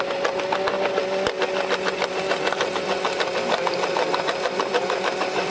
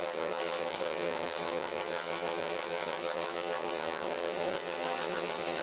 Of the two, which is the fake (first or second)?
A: second